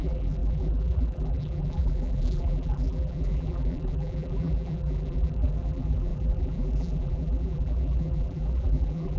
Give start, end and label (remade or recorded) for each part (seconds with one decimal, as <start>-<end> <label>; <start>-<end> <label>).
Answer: 0.0-9.2 remade